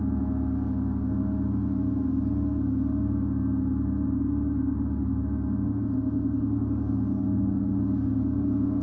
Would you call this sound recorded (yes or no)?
yes